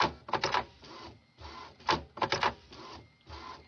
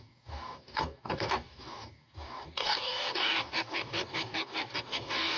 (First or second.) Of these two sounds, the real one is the first